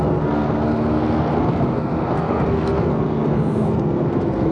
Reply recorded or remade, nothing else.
remade